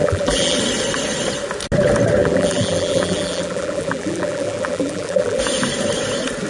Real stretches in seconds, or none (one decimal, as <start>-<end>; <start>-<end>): 0.6-2.2; 5.4-6.5